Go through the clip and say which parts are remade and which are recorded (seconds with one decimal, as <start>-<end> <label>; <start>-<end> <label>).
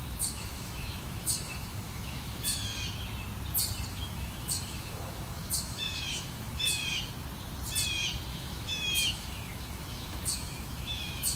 0.0-2.7 remade; 2.7-3.9 recorded; 3.9-6.8 remade; 6.8-8.3 recorded; 8.3-11.4 remade